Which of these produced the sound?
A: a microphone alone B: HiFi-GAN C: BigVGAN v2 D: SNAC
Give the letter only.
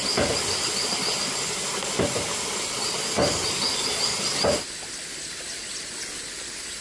A